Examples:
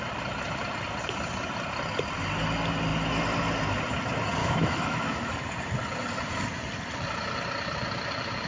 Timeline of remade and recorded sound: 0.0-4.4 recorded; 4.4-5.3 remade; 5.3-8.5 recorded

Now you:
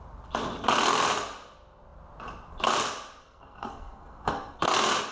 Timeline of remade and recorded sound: 0.0-3.2 recorded; 3.2-4.6 remade; 4.6-5.1 recorded